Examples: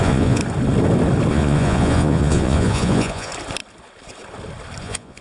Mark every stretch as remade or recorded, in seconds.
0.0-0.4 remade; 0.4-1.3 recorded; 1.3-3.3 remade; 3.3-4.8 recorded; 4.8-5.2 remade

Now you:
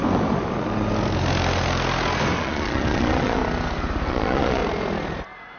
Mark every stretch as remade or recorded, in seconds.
0.0-2.4 recorded; 2.4-3.4 remade; 3.4-4.1 recorded; 4.1-4.6 remade; 4.6-5.6 recorded